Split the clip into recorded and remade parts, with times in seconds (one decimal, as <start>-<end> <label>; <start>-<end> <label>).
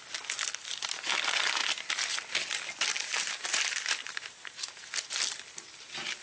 0.0-2.9 recorded; 2.9-4.7 remade; 4.7-6.2 recorded